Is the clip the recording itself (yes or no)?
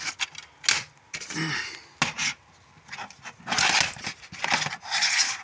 yes